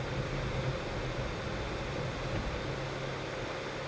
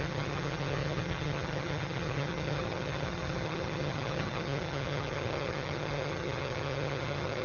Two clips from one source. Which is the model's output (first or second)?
second